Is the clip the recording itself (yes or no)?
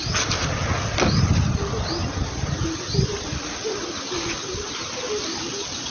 yes